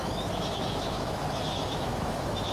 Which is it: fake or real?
fake